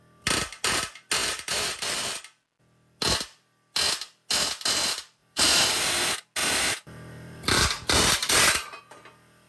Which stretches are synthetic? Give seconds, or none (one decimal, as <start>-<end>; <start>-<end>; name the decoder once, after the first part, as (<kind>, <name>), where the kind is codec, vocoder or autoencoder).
1.2-2.2 (vocoder, BigVGAN v2); 5.2-5.9; 6.4-8.8